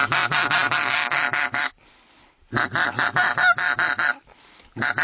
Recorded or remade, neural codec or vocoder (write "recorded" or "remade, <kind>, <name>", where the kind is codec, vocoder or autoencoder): recorded